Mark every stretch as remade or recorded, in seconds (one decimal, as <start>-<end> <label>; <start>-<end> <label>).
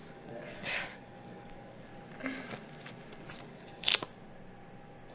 0.0-1.9 remade; 1.9-3.4 recorded; 3.4-3.9 remade; 3.9-5.1 recorded